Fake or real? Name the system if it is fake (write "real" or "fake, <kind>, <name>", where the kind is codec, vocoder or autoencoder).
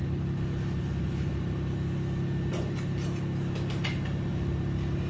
real